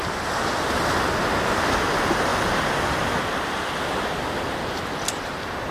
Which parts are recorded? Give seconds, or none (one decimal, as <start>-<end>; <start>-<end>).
0.0-5.7